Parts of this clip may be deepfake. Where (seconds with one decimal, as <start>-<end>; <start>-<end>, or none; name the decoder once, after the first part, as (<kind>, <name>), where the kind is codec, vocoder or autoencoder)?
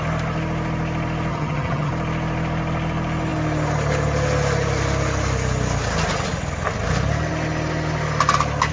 1.3-1.9 (vocoder, HiFi-GAN)